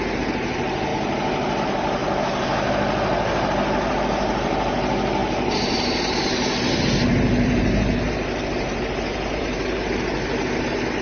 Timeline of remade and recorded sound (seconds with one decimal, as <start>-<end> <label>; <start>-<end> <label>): 0.0-0.9 remade; 0.9-1.6 recorded; 1.6-11.0 remade